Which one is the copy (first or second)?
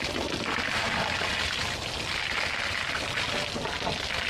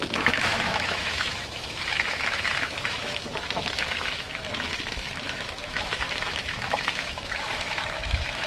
second